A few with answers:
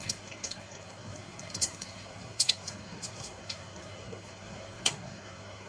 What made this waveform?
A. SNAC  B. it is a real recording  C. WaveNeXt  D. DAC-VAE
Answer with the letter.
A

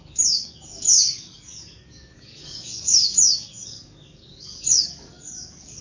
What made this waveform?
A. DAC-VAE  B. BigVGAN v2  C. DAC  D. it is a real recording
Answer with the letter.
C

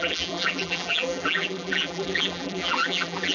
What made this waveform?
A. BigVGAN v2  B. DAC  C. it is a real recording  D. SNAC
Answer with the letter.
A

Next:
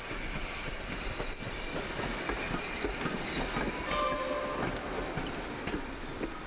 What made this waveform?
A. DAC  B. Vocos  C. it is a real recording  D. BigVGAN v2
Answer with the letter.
C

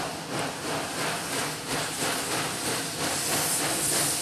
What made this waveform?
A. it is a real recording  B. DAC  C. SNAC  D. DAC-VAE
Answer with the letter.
A